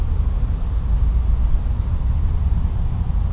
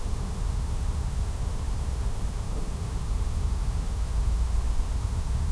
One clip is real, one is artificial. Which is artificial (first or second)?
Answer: second